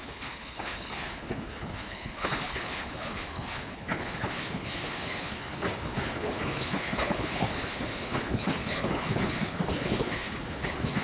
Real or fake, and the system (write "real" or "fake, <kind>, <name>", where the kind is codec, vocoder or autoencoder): fake, codec, HILCodec